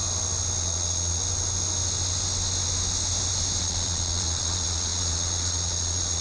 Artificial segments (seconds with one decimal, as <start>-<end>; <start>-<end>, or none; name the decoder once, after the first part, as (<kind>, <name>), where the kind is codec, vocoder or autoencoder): 0.6-1.2 (vocoder, Vocos); 3.6-6.2